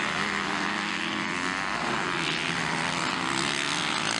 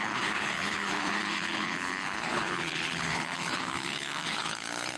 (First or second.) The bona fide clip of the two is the first